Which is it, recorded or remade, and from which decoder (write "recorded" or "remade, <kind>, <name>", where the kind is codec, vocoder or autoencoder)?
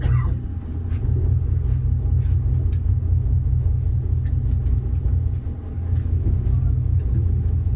recorded